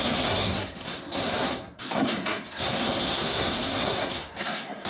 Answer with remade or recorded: remade